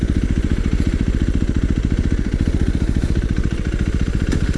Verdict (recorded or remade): remade